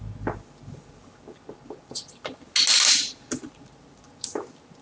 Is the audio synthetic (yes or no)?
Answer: no